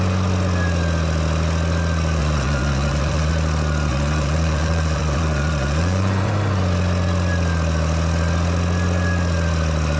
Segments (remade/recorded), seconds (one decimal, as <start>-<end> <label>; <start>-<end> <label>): 0.0-2.2 recorded; 2.2-3.3 remade; 3.3-3.9 recorded; 3.9-6.3 remade; 6.3-10.0 recorded